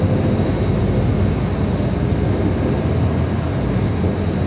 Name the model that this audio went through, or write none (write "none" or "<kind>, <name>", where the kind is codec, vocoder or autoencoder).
none